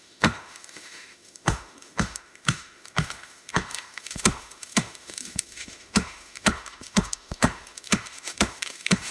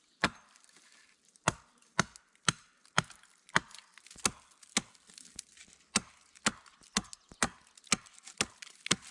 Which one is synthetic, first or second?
first